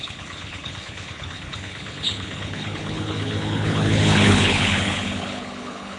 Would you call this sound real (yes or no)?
no